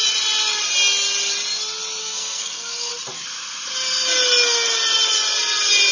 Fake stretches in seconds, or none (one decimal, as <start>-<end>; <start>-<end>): 2.0-2.9